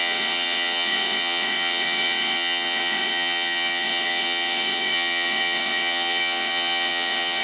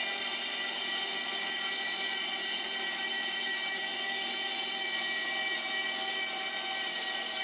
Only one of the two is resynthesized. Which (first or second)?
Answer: first